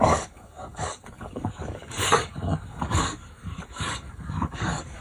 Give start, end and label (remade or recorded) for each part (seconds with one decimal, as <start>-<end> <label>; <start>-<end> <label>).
0.0-5.0 remade